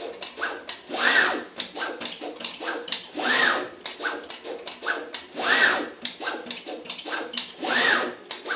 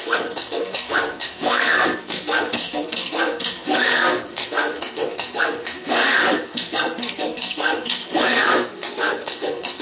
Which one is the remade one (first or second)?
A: second